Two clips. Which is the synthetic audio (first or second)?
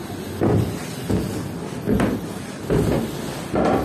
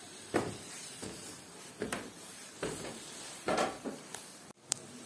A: second